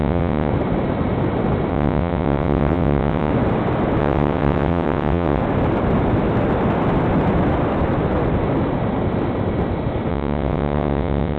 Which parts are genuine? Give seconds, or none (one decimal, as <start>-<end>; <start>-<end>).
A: 0.5-1.7; 3.3-4.0; 5.4-10.1